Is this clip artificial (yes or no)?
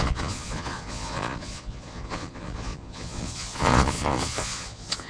yes